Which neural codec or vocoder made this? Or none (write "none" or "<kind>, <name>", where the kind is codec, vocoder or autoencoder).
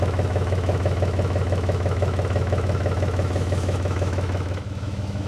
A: autoencoder, DAC-VAE